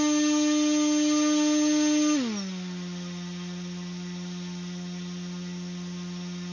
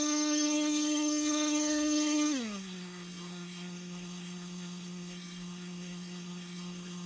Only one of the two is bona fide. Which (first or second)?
first